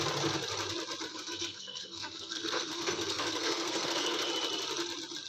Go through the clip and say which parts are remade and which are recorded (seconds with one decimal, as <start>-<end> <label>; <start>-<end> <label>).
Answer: 0.0-1.1 recorded; 1.1-4.3 remade; 4.3-5.3 recorded